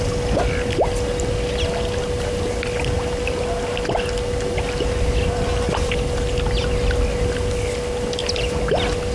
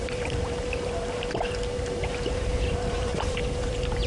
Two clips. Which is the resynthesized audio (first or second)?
second